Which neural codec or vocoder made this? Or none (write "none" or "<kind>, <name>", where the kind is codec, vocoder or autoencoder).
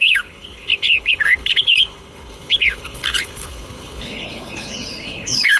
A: codec, HILCodec